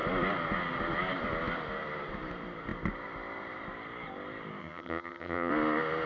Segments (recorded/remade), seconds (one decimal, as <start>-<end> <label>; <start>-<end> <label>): 0.0-4.6 recorded; 4.6-5.5 remade; 5.5-6.1 recorded

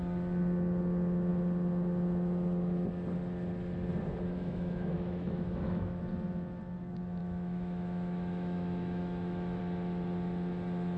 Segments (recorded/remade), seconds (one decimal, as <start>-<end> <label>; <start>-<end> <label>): 0.0-4.4 recorded; 4.4-6.0 remade; 6.0-7.2 recorded; 7.2-9.6 remade; 9.6-11.0 recorded

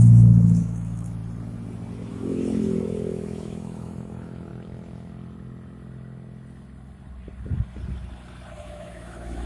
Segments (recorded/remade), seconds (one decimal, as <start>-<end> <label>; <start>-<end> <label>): 0.0-1.2 remade; 1.2-2.1 recorded; 2.1-4.5 remade; 4.5-8.6 recorded; 8.6-9.5 remade

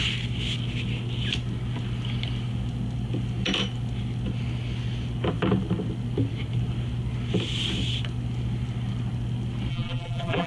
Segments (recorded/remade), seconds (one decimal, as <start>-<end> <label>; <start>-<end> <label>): 0.0-9.7 recorded; 9.7-10.5 remade

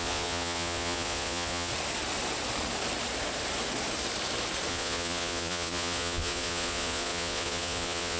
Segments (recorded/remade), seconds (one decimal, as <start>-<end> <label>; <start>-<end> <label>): 0.0-1.7 remade; 1.7-4.7 recorded; 4.7-8.2 remade